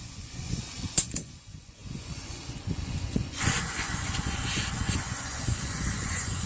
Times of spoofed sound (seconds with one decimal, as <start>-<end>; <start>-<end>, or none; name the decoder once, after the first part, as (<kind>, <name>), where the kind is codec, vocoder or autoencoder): 0.0-6.5 (vocoder, Vocos)